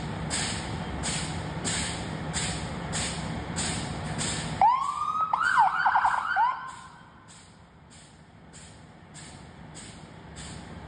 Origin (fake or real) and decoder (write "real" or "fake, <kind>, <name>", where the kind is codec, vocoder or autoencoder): real